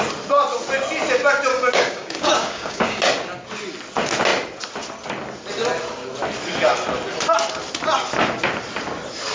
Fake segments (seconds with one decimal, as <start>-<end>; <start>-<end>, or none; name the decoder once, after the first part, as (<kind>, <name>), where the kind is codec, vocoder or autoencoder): 1.5-3.0 (codec, DAC)